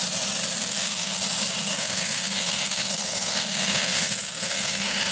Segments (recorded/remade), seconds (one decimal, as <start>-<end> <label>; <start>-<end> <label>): 0.0-0.6 recorded; 0.6-1.2 remade; 1.2-1.6 recorded; 1.6-5.1 remade